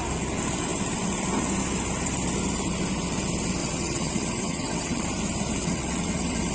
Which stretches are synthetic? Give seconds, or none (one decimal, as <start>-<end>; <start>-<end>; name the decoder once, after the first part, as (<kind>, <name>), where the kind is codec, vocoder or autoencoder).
3.6-5.0 (vocoder, WaveNeXt); 5.6-6.5